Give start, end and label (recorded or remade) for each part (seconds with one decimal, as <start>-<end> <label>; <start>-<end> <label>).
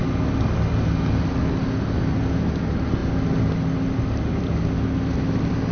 0.0-5.7 recorded